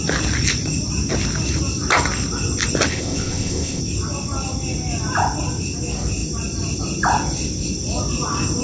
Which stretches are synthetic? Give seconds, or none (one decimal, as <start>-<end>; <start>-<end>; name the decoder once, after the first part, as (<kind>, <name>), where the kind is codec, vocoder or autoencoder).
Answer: 2.9-3.8 (codec, ZipCodec)